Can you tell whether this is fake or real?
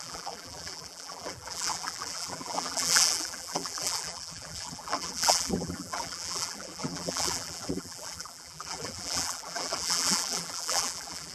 fake